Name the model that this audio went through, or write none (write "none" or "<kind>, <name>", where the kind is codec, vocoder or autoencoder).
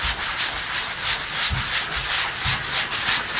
none